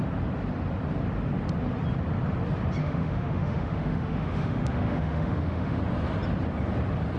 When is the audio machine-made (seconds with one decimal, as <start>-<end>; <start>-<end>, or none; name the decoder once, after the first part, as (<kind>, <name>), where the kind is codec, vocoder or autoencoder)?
2.8-5.8 (autoencoder, DAC-VAE)